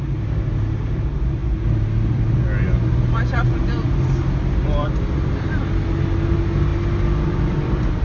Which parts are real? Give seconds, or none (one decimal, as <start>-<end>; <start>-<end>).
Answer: 0.0-8.0